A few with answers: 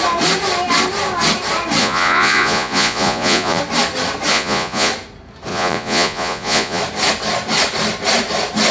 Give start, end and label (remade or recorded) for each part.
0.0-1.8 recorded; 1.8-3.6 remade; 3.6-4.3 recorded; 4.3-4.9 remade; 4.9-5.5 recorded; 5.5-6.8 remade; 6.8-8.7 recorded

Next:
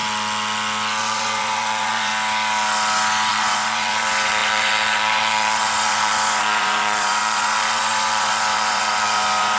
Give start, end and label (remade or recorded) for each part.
0.0-1.0 recorded; 1.0-2.1 remade; 2.1-3.3 recorded; 3.3-9.6 remade

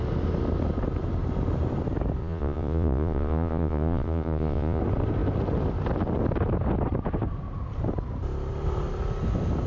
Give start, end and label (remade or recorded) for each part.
0.0-2.2 recorded; 2.2-4.8 remade; 4.8-9.7 recorded

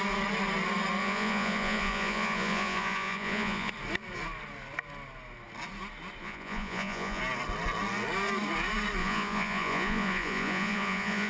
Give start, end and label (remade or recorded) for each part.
0.0-1.0 recorded; 1.0-3.7 remade; 3.7-6.2 recorded; 6.2-7.2 remade; 7.2-9.0 recorded; 9.0-11.3 remade